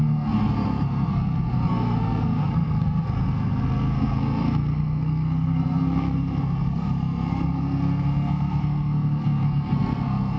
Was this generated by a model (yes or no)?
yes